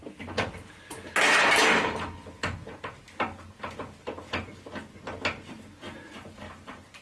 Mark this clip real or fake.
real